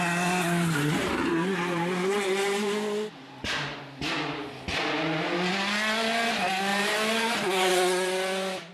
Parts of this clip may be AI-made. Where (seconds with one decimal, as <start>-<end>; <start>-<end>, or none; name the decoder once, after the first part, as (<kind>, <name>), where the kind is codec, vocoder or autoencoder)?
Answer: 6.7-7.7 (vocoder, BigVGAN v2)